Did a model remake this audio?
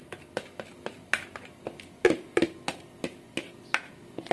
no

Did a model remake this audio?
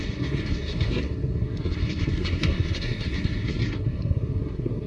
yes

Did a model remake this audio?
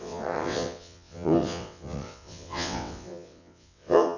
yes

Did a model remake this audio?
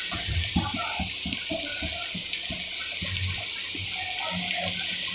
no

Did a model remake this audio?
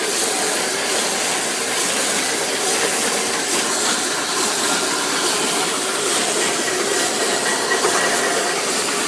no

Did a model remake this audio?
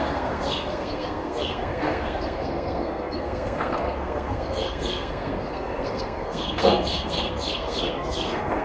yes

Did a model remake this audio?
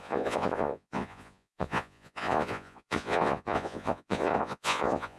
yes